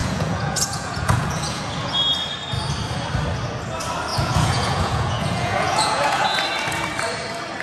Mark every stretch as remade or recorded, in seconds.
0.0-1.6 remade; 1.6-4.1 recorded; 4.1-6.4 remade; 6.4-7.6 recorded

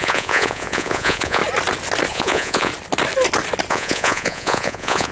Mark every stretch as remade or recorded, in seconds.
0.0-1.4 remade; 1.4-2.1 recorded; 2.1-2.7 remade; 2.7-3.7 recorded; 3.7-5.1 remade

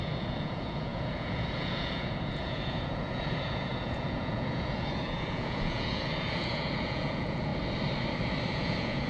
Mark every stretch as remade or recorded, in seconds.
0.0-7.5 remade; 7.5-8.5 recorded; 8.5-9.1 remade

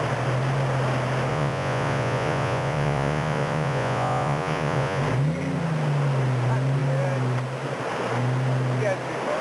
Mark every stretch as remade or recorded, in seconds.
0.0-1.3 recorded; 1.3-5.0 remade; 5.0-9.4 recorded